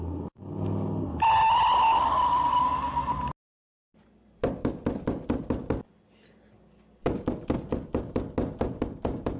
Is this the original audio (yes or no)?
yes